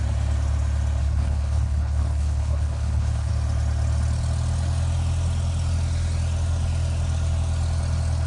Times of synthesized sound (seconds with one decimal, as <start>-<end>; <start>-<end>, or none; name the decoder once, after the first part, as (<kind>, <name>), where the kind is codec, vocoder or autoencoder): 1.0-3.3 (codec, HILCodec)